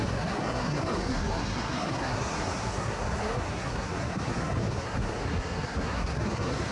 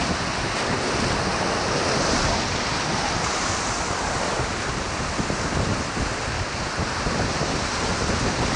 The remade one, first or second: first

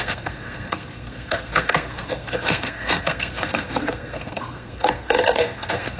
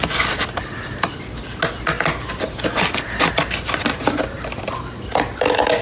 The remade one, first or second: first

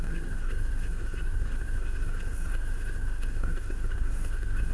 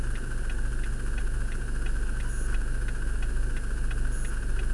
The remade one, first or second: first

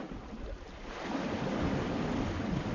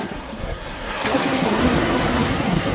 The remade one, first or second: second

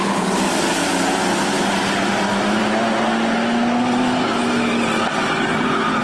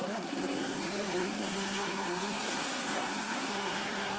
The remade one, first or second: second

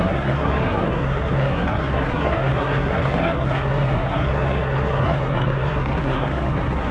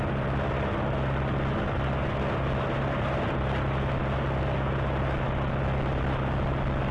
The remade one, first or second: first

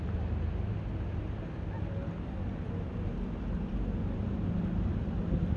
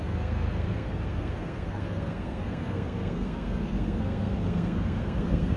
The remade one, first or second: second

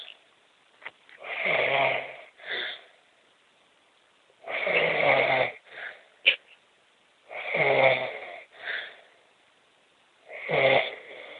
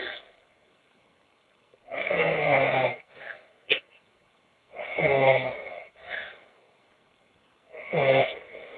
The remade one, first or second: second